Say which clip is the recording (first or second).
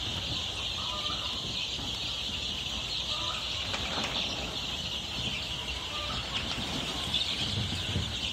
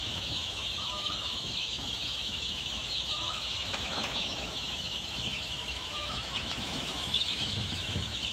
first